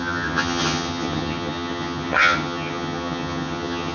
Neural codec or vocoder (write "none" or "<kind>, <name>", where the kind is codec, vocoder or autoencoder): vocoder, HiFi-GAN